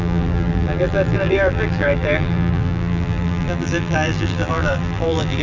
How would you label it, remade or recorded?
remade